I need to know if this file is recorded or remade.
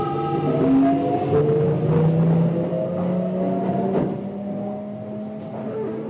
recorded